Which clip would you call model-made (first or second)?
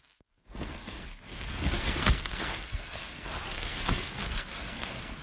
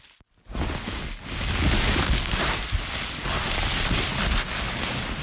first